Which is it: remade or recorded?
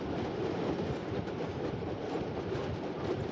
recorded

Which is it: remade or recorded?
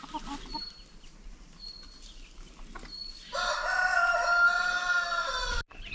recorded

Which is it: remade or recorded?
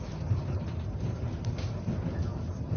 recorded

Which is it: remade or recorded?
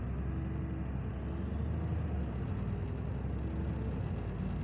recorded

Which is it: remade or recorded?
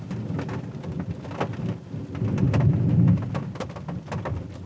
recorded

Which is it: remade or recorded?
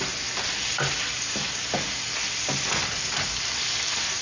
recorded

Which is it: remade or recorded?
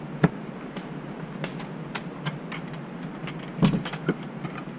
recorded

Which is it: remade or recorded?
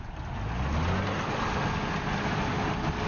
recorded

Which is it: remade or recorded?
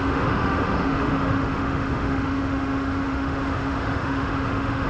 remade